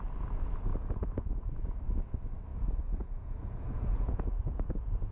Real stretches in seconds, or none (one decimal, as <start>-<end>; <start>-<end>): 0.0-0.7; 1.8-2.5